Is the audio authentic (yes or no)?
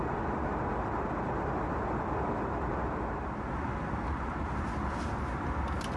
yes